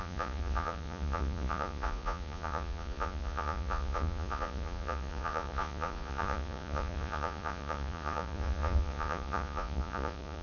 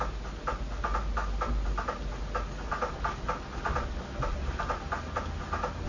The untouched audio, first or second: second